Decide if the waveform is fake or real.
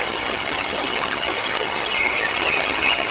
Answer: fake